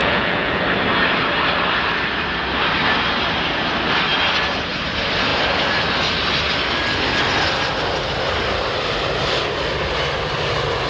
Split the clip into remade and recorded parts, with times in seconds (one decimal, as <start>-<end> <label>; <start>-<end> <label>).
0.0-0.6 remade; 0.6-10.9 recorded